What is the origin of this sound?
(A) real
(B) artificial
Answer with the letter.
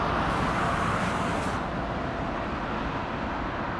A